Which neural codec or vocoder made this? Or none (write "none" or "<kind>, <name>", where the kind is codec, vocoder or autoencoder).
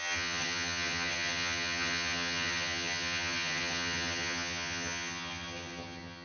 vocoder, HiFi-GAN